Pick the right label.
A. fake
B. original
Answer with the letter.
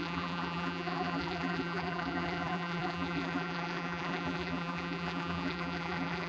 A